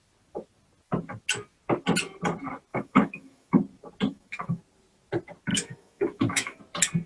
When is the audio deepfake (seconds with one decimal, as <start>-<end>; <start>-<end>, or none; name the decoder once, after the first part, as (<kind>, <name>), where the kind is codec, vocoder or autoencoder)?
2.7-3.5 (autoencoder, DAC-VAE); 4.1-4.6; 5.5-6.6